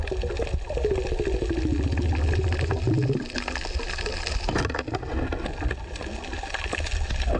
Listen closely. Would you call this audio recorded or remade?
recorded